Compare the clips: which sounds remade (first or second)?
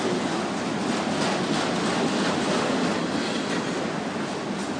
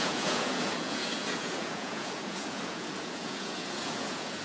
second